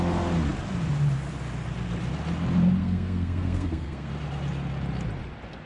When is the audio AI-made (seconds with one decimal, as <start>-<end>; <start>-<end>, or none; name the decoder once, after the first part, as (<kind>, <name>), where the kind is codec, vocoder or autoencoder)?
2.8-4.1 (codec, SNAC)